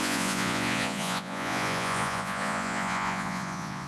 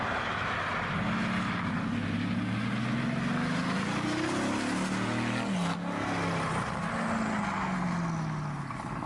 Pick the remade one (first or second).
first